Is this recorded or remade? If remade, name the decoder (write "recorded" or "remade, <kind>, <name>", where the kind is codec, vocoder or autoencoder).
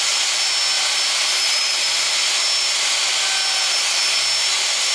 recorded